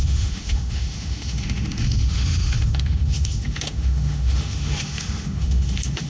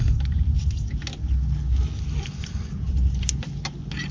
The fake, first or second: first